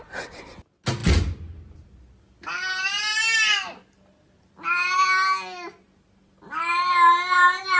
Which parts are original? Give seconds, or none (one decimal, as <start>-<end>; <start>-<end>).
0.0-7.8